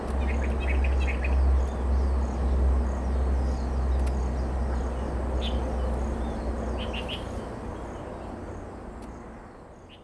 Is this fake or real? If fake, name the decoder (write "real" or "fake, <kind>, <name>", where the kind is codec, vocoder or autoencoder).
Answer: real